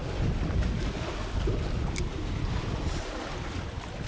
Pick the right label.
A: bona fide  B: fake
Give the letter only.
A